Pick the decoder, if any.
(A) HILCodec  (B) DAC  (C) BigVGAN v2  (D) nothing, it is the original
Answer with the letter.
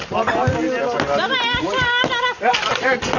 D